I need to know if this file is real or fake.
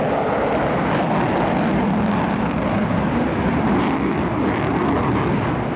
fake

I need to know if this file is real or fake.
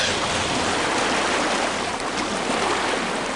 real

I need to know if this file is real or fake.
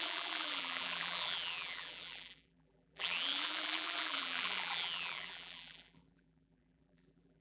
fake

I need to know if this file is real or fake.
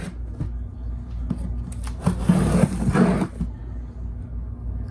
real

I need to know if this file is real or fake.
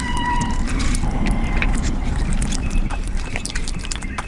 fake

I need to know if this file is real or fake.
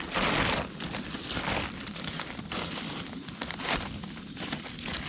real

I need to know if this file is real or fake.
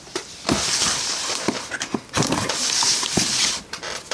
fake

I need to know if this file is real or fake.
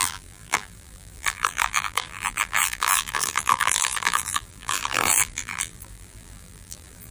fake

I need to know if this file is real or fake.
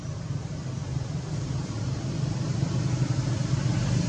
real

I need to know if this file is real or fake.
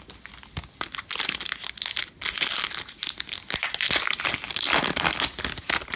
real